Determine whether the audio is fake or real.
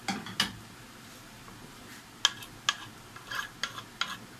real